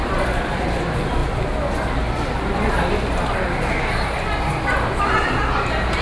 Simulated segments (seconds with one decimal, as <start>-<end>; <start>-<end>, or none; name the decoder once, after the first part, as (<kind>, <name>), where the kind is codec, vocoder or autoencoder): none